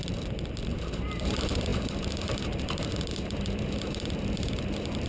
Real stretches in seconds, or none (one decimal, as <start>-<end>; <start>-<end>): 0.0-0.7